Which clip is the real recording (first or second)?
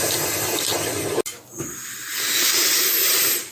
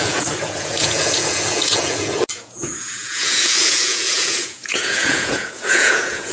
first